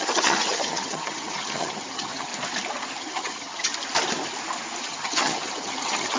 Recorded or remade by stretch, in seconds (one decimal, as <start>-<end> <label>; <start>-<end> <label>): 0.0-2.3 remade; 2.3-3.0 recorded; 3.0-3.7 remade; 3.7-4.8 recorded; 4.8-6.2 remade